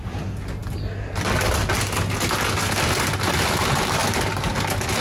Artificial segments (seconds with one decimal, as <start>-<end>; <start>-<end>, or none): none